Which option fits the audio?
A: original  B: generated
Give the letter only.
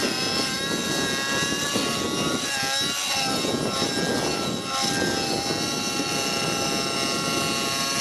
A